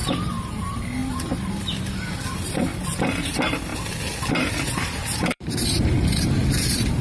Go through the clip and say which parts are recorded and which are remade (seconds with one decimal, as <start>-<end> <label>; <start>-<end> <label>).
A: 0.0-0.6 recorded; 0.6-1.0 remade; 1.0-2.3 recorded; 2.3-3.7 remade; 3.7-4.4 recorded; 4.4-7.0 remade